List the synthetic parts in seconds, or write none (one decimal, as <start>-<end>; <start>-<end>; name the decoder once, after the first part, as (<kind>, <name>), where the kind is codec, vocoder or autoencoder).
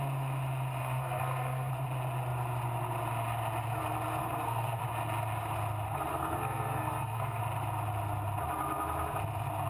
0.8-1.7 (codec, SNAC); 4.2-4.8; 6.1-7.4